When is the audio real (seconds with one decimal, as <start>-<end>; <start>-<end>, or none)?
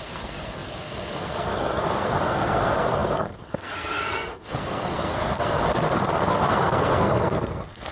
none